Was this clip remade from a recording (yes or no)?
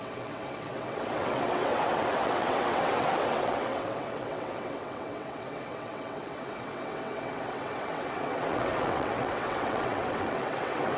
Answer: yes